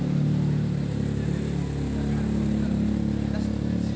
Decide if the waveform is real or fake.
real